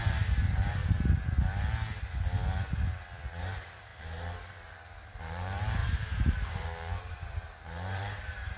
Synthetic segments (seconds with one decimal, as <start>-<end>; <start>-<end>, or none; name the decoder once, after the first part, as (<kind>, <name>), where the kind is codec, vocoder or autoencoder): 0.0-0.8 (vocoder, BigVGAN v2); 3.4-8.6